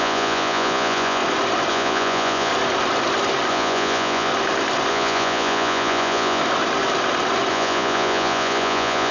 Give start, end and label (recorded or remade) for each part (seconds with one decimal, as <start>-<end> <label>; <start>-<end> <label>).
0.0-1.2 remade; 1.2-1.7 recorded; 1.7-2.5 remade; 2.5-3.5 recorded; 3.5-4.3 remade; 4.3-4.9 recorded; 4.9-6.4 remade; 6.4-7.5 recorded; 7.5-9.1 remade